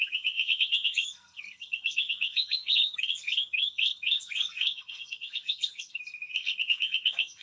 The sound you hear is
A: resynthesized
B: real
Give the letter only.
A